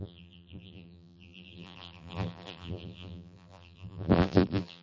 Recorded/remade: remade